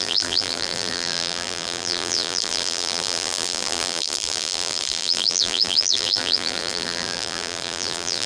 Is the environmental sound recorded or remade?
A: remade